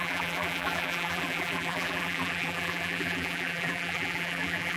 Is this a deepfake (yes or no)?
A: yes